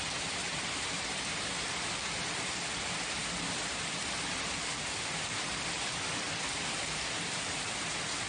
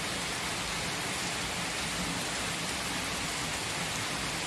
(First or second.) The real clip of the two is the second